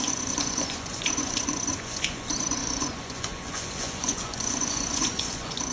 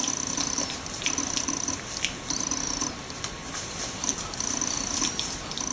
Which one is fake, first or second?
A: first